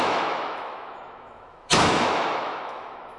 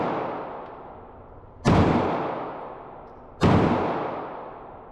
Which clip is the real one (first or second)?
second